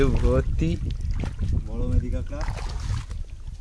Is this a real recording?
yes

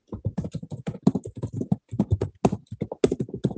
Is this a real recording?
yes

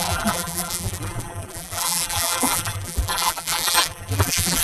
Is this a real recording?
no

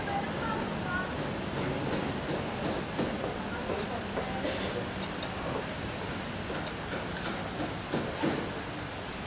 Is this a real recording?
yes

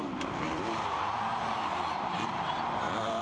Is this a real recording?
no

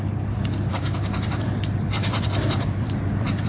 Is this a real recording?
no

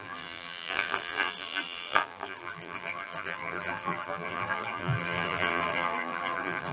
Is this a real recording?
no